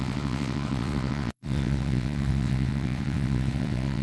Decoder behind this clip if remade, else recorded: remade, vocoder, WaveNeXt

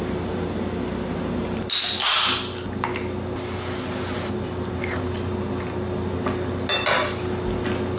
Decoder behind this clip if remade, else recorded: recorded